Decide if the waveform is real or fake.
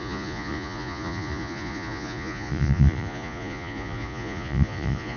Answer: fake